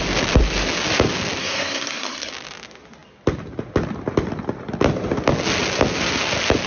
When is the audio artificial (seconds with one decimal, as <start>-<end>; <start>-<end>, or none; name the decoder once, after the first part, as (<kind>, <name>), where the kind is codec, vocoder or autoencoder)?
1.4-2.3 (codec, SNAC)